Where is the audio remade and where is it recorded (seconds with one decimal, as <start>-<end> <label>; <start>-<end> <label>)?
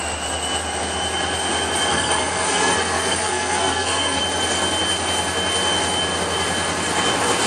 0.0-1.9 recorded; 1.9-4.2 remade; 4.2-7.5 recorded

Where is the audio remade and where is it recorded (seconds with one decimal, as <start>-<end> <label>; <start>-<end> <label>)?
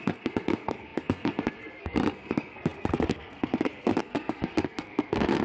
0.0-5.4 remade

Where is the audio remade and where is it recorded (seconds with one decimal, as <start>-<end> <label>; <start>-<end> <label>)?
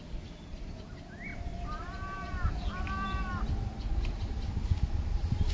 0.0-5.5 recorded